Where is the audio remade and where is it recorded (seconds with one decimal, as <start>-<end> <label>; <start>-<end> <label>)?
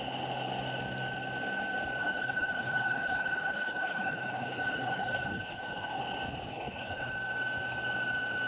0.0-2.0 recorded; 2.0-6.0 remade; 6.0-6.5 recorded; 6.5-7.1 remade; 7.1-8.5 recorded